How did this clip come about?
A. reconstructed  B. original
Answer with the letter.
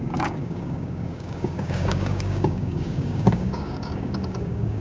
A